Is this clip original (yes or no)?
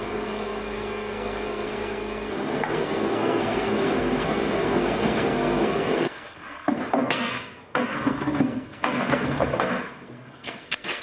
no